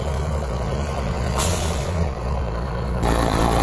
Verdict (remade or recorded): remade